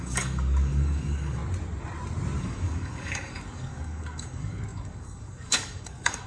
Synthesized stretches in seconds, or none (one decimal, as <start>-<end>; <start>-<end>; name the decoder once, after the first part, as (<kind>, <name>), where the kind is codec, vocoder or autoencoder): 0.0-1.4 (codec, DAC); 2.4-6.3